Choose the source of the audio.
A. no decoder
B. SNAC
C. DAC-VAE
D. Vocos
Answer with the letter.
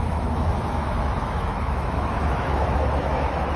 C